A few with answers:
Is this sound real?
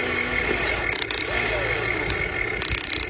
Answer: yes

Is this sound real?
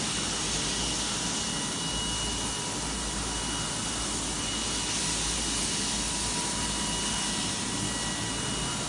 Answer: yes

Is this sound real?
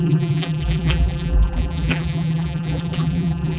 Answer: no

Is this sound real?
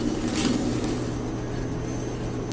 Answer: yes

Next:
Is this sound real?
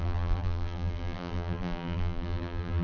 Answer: no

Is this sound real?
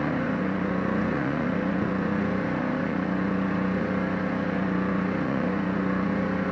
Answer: no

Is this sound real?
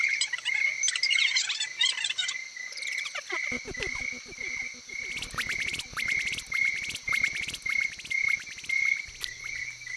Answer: yes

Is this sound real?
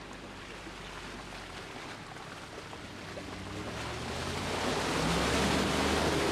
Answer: yes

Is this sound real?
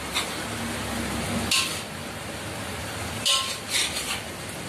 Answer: yes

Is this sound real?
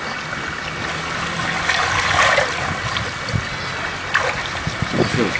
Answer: yes